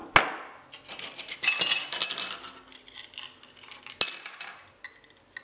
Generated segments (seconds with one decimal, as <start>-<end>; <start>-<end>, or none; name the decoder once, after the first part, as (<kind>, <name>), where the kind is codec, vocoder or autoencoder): none